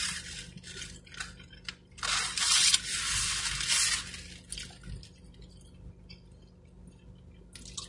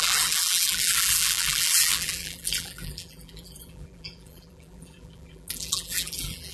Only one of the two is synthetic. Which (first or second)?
second